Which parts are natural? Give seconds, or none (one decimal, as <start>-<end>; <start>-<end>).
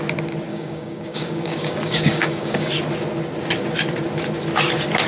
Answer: 0.0-0.5; 2.7-5.1